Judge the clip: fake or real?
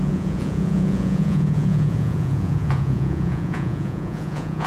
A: fake